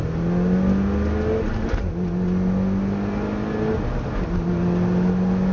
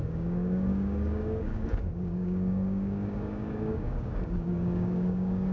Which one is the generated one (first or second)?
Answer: second